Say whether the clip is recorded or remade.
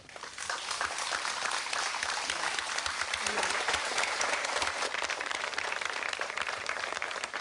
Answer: remade